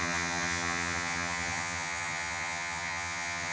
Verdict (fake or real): fake